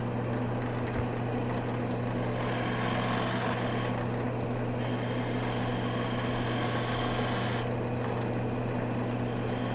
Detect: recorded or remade recorded